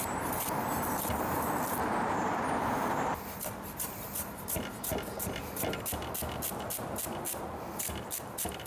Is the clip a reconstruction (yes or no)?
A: yes